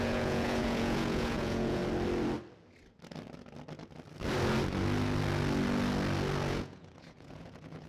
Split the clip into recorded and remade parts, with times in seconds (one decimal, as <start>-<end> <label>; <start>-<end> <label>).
0.0-1.8 remade; 1.8-6.5 recorded; 6.5-7.9 remade